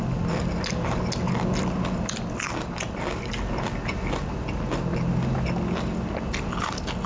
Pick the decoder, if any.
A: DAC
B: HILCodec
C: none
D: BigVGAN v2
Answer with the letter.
C